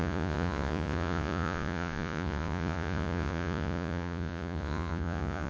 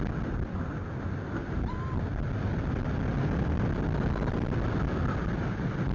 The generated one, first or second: first